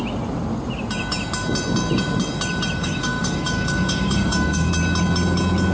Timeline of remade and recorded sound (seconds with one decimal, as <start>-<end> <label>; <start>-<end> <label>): 0.0-2.8 recorded; 2.8-4.7 remade; 4.7-5.7 recorded